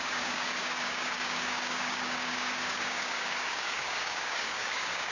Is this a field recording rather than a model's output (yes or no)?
no